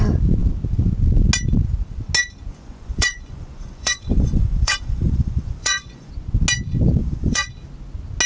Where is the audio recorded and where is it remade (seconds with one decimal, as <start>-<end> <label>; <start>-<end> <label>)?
0.0-2.5 recorded; 2.5-6.1 remade; 6.1-7.0 recorded; 7.0-7.5 remade; 7.5-8.3 recorded